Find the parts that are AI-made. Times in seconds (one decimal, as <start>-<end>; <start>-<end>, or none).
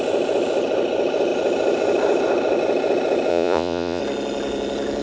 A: 3.3-4.0